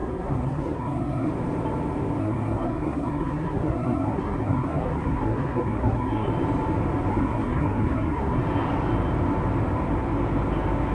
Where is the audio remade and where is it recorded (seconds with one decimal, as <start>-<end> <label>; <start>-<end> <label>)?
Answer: 0.0-1.3 remade; 1.3-2.2 recorded; 2.2-6.3 remade; 6.3-7.1 recorded; 7.1-8.4 remade; 8.4-10.9 recorded